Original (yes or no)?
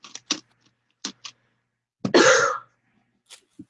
yes